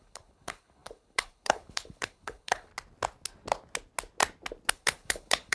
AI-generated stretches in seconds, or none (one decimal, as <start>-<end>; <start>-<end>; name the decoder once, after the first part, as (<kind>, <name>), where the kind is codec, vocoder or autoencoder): 0.0-2.7 (codec, HILCodec); 4.7-5.5